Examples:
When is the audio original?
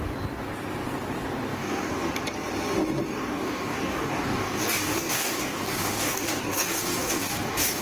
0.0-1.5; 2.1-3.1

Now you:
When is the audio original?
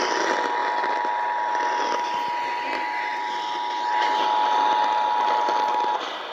0.0-6.3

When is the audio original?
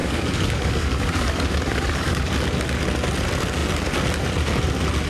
2.2-5.1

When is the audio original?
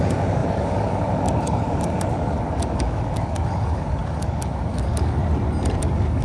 5.2-5.8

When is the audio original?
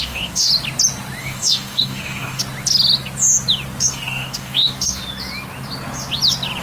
0.5-1.2; 2.4-3.8; 5.0-6.6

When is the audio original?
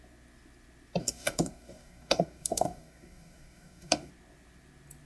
0.0-1.0; 4.1-5.1